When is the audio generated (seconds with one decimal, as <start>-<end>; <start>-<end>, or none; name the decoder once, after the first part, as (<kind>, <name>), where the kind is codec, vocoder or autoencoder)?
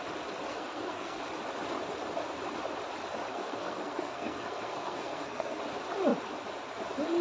0.5-1.2 (codec, SNAC); 3.3-5.6